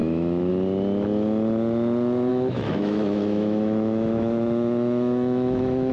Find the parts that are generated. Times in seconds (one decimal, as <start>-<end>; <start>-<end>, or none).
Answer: 0.0-0.5; 2.3-5.9